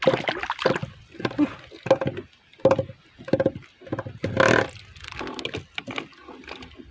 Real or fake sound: real